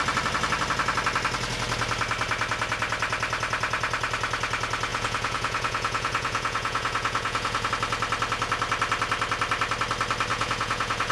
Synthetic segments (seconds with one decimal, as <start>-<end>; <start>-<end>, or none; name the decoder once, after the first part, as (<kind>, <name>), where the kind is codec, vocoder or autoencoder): 4.9-7.7 (vocoder, Vocos); 10.3-11.1